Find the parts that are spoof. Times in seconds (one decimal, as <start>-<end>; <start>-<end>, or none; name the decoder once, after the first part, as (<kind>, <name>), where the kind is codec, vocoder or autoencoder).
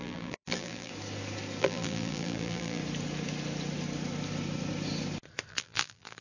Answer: 0.0-0.9 (vocoder, BigVGAN v2); 1.6-2.8; 5.5-6.2